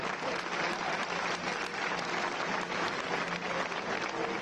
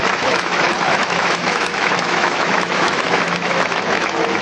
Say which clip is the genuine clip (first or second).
first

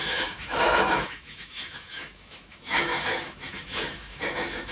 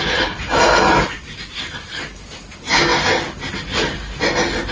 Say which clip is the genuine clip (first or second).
second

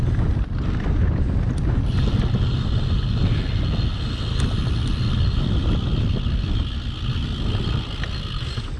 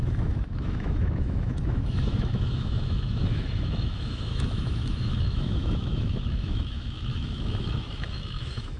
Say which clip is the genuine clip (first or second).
first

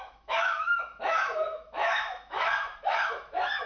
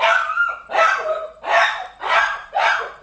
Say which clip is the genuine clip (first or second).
second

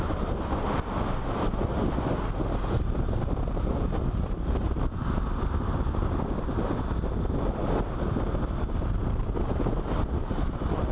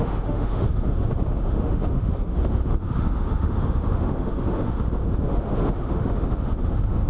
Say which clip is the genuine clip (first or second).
first